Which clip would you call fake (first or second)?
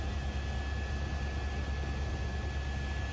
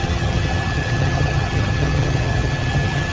second